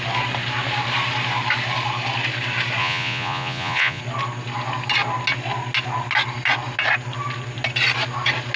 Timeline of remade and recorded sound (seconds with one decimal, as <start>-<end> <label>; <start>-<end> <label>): 0.0-2.8 recorded; 2.8-4.0 remade; 4.0-8.6 recorded